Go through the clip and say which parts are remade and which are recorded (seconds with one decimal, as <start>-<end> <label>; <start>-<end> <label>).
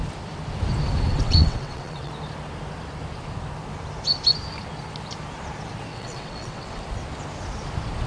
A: 0.0-1.1 recorded; 1.1-2.1 remade; 2.1-5.9 recorded; 5.9-6.8 remade; 6.8-8.1 recorded